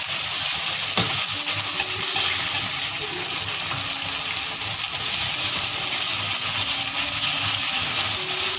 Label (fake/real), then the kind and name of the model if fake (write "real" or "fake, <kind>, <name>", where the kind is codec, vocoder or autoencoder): real